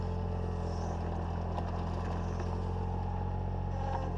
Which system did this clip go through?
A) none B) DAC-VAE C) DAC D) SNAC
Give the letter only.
A